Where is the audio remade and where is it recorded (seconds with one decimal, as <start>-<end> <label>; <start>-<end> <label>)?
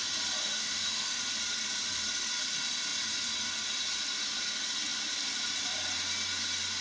0.0-0.4 recorded; 0.4-1.2 remade; 1.2-6.8 recorded